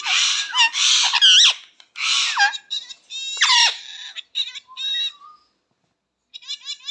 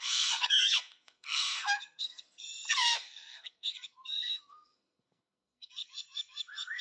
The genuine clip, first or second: first